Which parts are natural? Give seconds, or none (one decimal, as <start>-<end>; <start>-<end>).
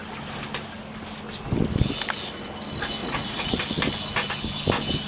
0.0-3.0; 3.6-5.1